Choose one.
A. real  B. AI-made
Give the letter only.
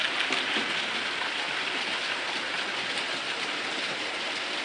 A